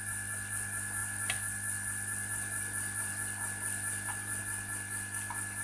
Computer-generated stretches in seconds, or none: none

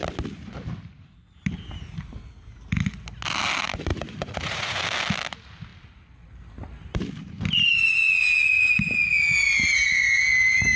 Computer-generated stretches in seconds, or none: 3.9-4.8 (vocoder, Vocos)

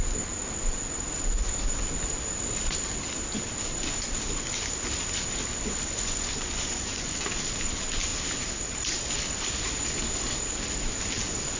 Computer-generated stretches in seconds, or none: 5.5-7.3 (vocoder, Vocos)

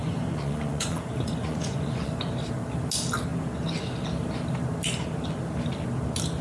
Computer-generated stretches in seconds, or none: 0.0-2.1 (vocoder, Vocos)

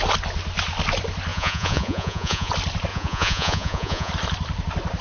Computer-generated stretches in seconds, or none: 1.3-2.5 (vocoder, Vocos); 2.9-4.1